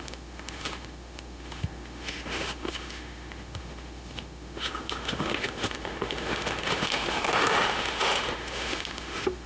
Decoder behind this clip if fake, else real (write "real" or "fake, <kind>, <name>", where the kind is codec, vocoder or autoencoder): fake, autoencoder, DAC-VAE